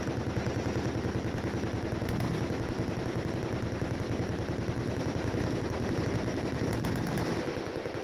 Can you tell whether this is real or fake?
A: real